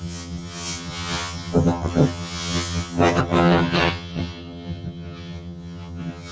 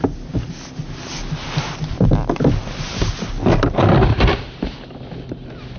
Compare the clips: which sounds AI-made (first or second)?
first